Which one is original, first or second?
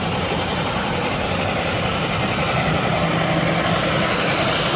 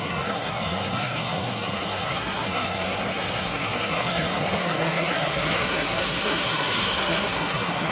first